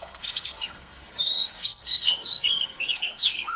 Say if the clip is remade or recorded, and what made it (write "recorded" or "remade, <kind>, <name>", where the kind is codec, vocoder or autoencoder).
remade, codec, SNAC